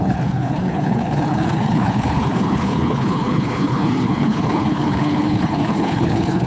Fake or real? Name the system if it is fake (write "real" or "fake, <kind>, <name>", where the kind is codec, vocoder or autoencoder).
fake, codec, HILCodec